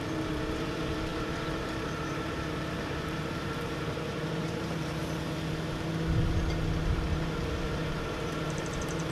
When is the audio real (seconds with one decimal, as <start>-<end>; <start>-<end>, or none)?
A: 5.0-6.8

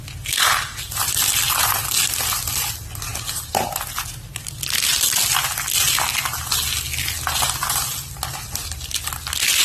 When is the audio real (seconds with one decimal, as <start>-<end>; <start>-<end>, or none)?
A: 0.0-9.6

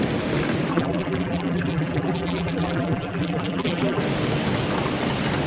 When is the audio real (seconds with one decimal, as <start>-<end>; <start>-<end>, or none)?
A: 0.0-0.7; 4.0-5.5

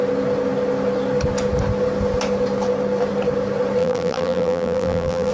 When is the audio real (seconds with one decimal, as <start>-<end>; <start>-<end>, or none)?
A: 0.0-3.8